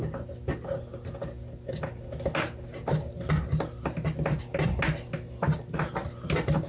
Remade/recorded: recorded